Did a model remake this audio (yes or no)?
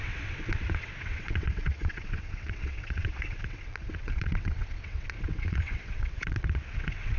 yes